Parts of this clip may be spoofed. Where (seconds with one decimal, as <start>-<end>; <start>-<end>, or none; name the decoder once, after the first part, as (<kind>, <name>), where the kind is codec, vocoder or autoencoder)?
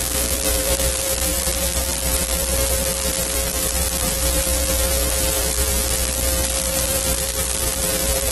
0.0-8.3 (vocoder, BigVGAN v2)